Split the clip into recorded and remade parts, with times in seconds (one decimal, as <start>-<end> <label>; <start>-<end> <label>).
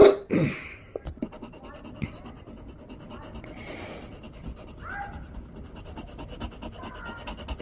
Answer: 0.0-7.6 recorded